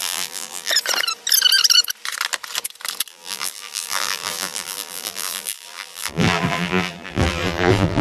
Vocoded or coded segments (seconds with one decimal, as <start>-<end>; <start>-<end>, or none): 0.0-0.7; 3.1-8.0